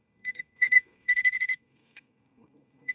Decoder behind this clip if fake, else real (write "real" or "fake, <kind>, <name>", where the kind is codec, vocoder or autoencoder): fake, codec, SNAC